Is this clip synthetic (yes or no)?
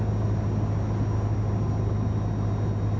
no